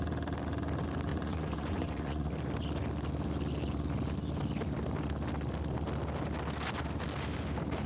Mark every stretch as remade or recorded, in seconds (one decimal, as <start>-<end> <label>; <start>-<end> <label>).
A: 0.0-1.1 recorded; 1.1-2.3 remade; 2.3-7.9 recorded